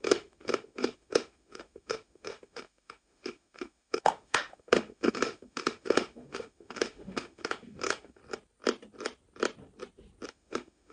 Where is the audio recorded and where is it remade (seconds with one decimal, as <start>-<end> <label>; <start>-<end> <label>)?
0.0-8.2 remade; 8.2-10.3 recorded; 10.3-10.9 remade